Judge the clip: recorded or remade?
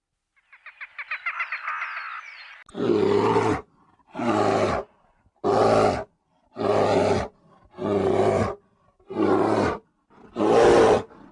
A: recorded